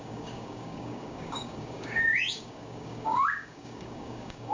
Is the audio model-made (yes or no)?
yes